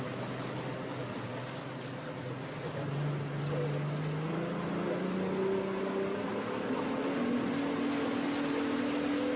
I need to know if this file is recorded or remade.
recorded